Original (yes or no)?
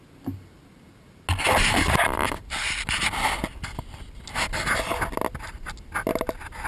yes